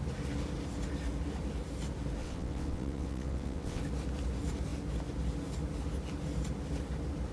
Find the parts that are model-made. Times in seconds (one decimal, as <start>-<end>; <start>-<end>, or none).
2.2-3.8